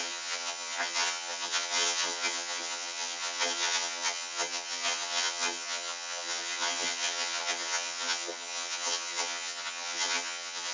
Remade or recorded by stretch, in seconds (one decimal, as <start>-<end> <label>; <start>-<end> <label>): 0.0-10.7 remade